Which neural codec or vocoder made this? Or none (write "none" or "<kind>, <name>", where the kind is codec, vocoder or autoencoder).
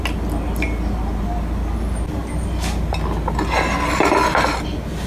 none